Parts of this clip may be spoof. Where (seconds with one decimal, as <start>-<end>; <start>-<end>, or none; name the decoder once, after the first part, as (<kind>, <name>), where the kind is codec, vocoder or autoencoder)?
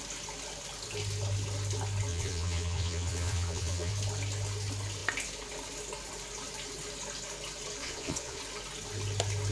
2.1-3.9 (vocoder, Vocos); 7.8-8.4